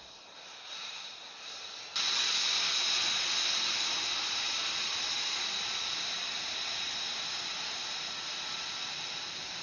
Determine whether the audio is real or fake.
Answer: real